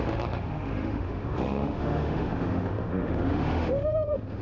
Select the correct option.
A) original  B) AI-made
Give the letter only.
B